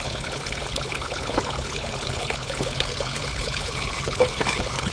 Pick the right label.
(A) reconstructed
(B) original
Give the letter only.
A